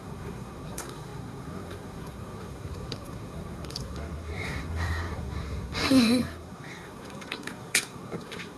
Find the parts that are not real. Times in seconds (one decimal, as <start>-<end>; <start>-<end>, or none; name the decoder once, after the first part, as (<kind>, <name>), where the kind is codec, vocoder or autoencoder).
0.0-8.6 (codec, SNAC)